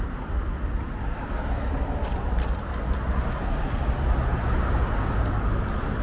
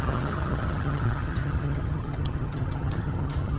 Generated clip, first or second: second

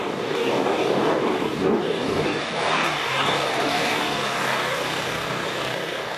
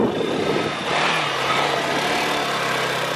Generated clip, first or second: first